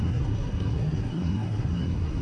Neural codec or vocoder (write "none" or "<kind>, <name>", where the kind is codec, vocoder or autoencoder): codec, SNAC